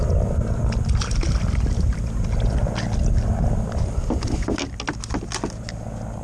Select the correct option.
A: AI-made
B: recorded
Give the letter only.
B